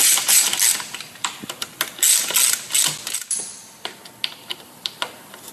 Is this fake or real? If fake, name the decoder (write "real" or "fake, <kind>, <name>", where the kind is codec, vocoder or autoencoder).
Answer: real